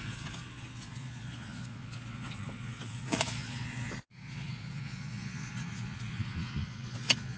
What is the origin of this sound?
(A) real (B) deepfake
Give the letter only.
B